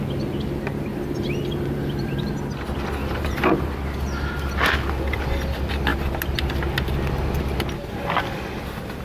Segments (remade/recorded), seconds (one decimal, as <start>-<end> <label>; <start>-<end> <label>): 0.0-0.9 recorded; 0.9-2.3 remade; 2.3-3.0 recorded; 3.0-3.7 remade; 3.7-9.0 recorded